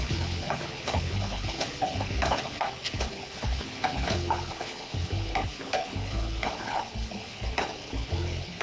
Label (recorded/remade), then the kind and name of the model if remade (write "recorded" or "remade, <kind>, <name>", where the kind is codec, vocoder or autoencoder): remade, codec, HILCodec